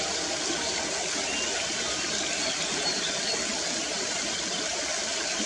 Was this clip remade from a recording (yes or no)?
no